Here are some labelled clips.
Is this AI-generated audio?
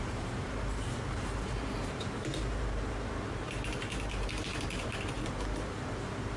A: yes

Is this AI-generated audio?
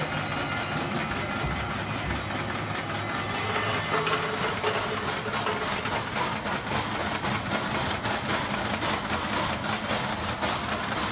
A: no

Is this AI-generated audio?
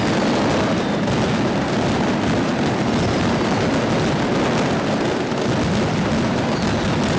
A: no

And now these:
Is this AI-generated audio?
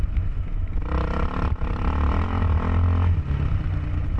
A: no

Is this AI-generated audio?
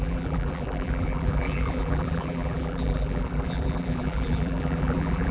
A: yes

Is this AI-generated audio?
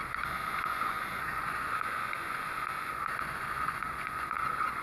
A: yes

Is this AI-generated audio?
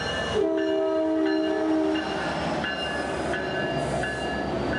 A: no